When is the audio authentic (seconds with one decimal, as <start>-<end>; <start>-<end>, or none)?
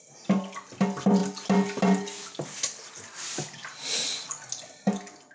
0.0-5.3